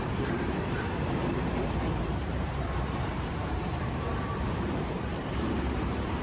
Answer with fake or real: fake